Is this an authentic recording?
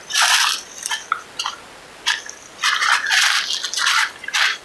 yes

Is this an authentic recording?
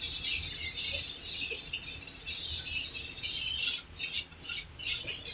yes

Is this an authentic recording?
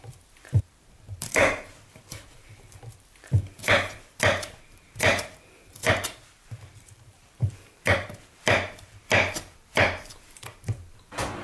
no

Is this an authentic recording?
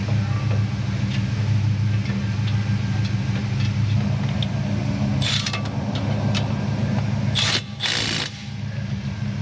yes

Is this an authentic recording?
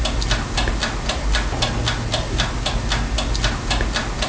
yes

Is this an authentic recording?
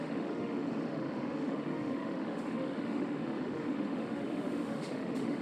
no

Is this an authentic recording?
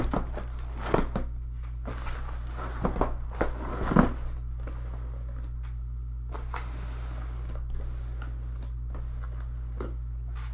yes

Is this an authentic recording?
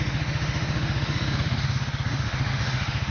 no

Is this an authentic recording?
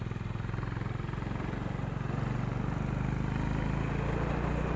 yes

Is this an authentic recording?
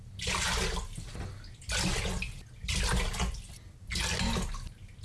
yes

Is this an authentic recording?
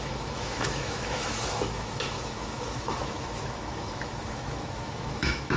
no